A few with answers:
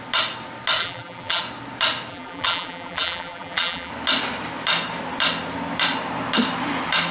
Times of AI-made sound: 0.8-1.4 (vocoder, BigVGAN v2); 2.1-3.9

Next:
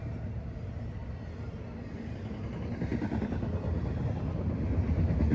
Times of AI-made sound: 2.9-4.1 (vocoder, BigVGAN v2)

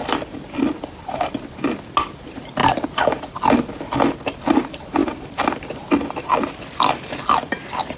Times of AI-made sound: 0.0-0.8 (vocoder, BigVGAN v2); 2.6-3.3; 5.0-6.9

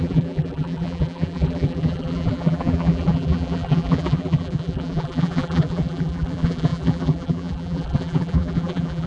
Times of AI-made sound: 0.0-9.1 (vocoder, BigVGAN v2)